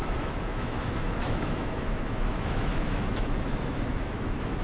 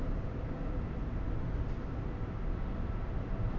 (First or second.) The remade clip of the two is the first